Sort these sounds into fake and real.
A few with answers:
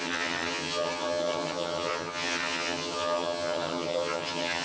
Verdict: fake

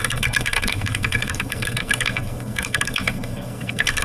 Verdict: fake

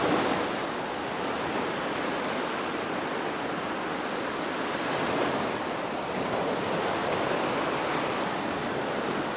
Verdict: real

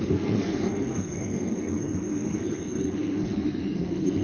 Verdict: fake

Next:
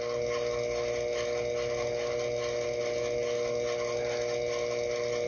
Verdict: real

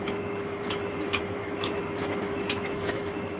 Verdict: fake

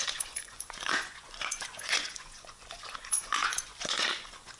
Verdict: fake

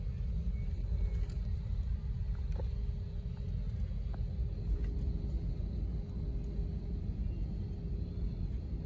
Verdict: real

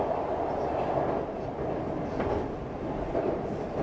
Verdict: real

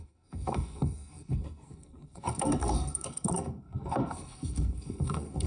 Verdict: fake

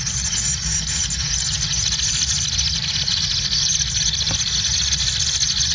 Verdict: real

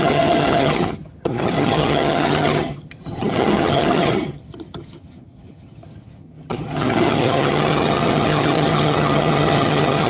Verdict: fake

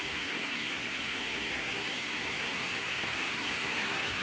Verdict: fake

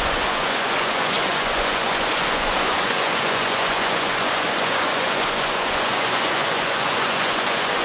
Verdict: fake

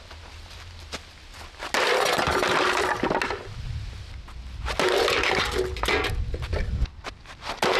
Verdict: real